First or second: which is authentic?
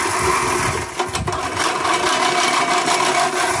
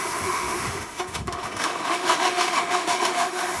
first